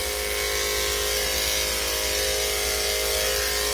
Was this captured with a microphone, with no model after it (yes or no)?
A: yes